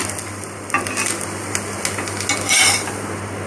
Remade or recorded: recorded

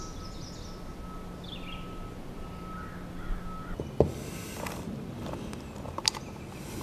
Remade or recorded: recorded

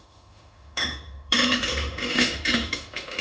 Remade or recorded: remade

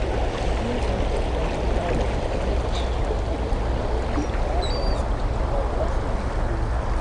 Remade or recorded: recorded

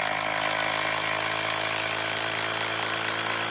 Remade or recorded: recorded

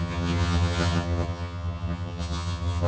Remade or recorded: remade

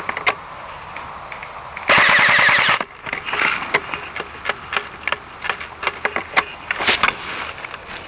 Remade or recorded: recorded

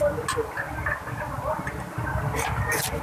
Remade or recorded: recorded